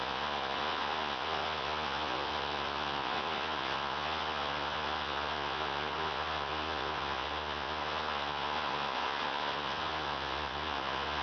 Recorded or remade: remade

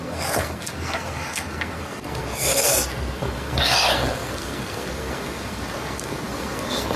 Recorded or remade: remade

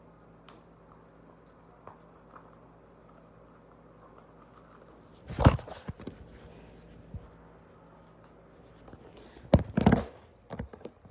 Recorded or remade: recorded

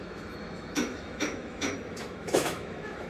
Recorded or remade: remade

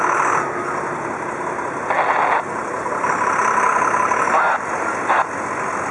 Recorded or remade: recorded